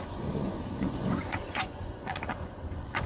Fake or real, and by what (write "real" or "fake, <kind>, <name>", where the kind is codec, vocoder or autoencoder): fake, vocoder, Vocos